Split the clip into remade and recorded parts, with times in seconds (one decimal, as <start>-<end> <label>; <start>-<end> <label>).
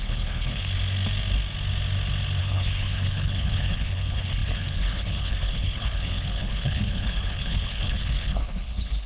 0.0-0.7 remade; 0.7-2.4 recorded; 2.4-9.1 remade